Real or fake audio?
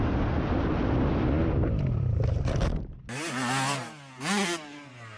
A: real